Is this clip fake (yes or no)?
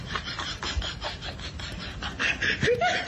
no